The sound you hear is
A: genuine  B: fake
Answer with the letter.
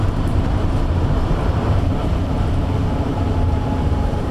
B